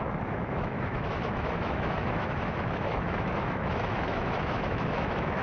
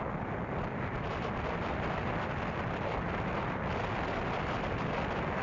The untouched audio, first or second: second